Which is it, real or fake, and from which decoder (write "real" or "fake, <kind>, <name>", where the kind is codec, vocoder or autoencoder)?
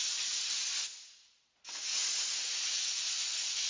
real